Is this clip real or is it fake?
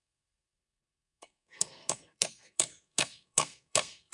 fake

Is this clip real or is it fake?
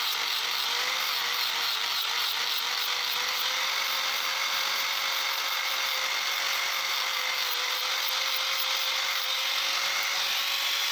real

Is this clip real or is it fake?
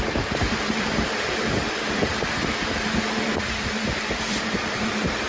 fake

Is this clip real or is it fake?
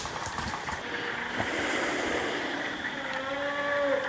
real